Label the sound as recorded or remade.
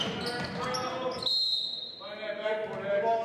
recorded